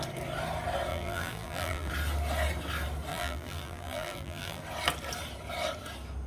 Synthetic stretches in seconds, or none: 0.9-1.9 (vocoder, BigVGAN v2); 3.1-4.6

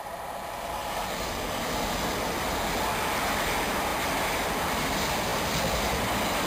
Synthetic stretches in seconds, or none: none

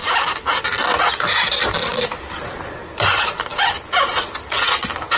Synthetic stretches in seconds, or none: 1.9-2.8 (vocoder, BigVGAN v2)

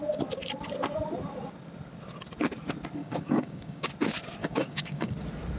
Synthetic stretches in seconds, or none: 3.0-3.9 (codec, DAC); 4.4-5.1

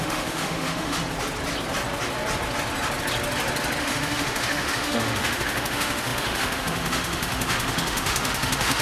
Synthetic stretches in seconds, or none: 0.0-1.0 (autoencoder, DAC-VAE); 3.8-8.8

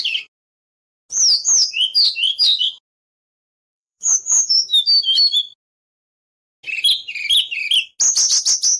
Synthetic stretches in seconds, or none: 3.3-4.8 (codec, DAC)